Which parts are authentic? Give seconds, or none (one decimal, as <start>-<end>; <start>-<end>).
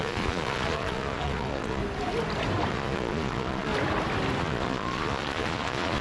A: 1.8-2.7; 3.7-4.4